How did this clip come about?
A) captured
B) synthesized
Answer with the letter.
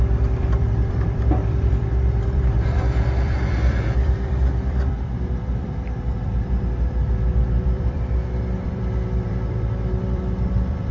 B